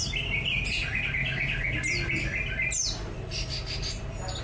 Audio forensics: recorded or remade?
recorded